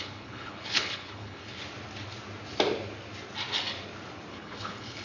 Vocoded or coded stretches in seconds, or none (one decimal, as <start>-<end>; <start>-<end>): 0.0-1.6; 4.3-5.0